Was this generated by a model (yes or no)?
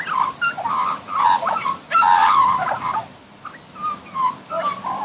no